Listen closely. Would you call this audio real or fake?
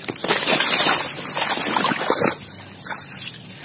fake